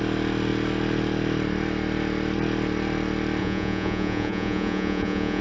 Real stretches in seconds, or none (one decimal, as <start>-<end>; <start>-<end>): 0.0-3.4